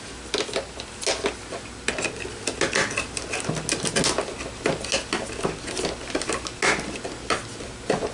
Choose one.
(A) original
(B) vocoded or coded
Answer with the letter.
A